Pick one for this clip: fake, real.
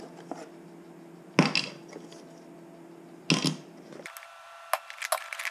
real